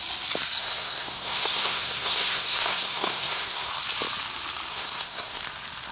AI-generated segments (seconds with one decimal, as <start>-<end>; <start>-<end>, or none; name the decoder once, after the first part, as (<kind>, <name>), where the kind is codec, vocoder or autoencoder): 0.6-3.7 (codec, SNAC); 4.7-5.4